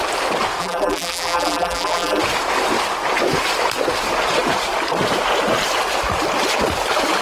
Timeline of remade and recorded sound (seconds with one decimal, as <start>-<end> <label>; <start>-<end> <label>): 0.0-0.6 recorded; 0.6-2.2 remade; 2.2-7.2 recorded